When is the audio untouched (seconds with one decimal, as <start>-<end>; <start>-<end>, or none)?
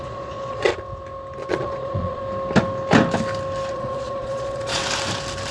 0.7-1.5; 2.2-3.7; 4.8-5.5